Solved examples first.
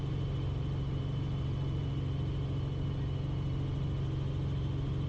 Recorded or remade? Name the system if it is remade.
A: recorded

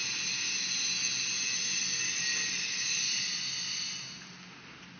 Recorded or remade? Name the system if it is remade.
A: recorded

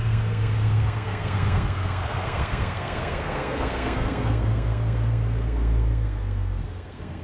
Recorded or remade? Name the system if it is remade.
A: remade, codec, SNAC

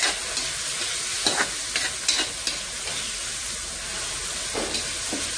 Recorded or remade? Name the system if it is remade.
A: recorded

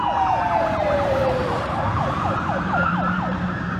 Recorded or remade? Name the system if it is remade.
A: remade, vocoder, BigVGAN v2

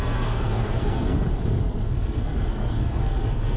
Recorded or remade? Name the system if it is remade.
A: remade, codec, SNAC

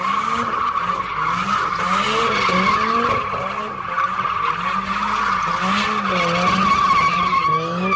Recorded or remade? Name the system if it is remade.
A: recorded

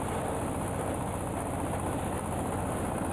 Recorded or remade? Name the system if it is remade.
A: recorded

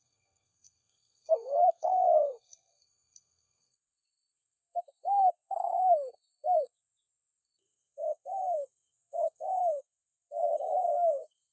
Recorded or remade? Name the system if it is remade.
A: remade, codec, SNAC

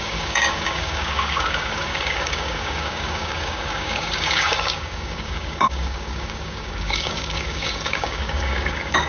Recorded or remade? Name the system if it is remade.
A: remade, codec, DAC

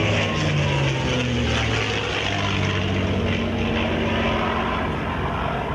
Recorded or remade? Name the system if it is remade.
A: recorded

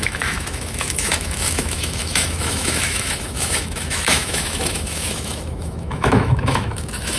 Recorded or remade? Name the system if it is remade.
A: remade, autoencoder, DAC-VAE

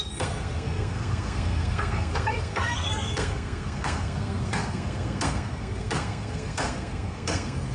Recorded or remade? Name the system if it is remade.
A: remade, codec, SNAC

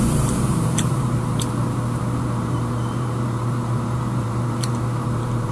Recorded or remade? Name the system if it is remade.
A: remade, vocoder, BigVGAN v2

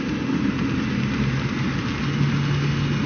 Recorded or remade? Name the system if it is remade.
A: recorded